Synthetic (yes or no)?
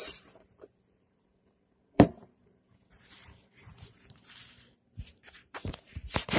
yes